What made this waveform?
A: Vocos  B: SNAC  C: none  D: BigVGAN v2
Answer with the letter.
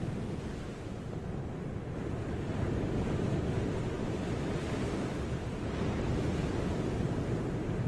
C